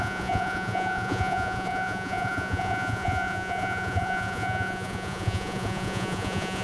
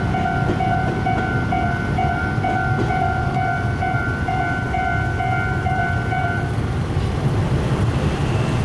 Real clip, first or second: second